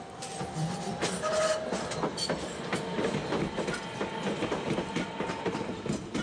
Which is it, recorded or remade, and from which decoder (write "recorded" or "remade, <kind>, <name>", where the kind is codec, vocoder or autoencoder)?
recorded